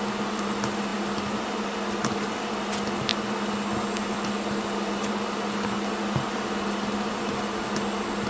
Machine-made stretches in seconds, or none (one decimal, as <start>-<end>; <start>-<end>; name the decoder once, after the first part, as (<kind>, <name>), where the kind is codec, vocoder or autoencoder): none